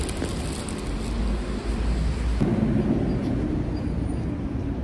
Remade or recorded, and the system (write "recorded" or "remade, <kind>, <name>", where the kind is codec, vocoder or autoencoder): recorded